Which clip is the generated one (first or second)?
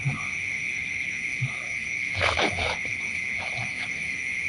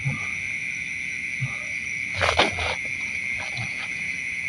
first